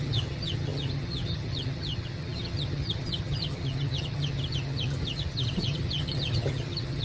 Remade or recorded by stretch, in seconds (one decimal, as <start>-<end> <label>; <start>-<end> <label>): 0.0-7.0 remade